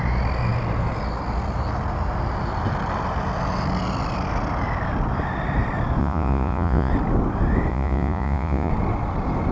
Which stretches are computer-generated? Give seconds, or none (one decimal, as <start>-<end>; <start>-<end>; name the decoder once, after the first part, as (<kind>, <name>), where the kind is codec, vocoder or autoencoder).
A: 6.0-6.9 (vocoder, Vocos); 7.7-8.7

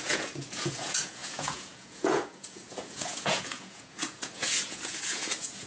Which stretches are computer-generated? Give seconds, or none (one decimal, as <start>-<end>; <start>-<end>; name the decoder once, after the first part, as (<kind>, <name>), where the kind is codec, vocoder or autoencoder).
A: 0.0-5.7 (vocoder, Vocos)

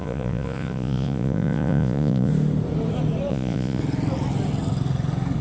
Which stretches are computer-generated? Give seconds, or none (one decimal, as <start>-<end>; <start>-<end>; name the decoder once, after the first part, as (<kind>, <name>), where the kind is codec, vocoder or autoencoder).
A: 0.0-2.3 (vocoder, Vocos); 3.3-3.8